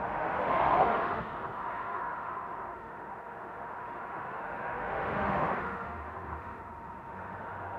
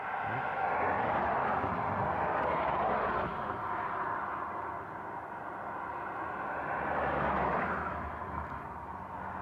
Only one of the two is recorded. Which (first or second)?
second